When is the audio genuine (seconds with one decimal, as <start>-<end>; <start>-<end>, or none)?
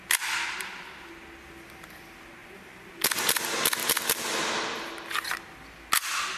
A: 0.0-2.4; 2.9-6.4